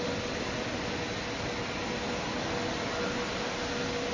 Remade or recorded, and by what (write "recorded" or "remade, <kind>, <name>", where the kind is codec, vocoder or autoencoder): recorded